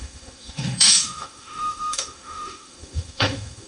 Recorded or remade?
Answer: remade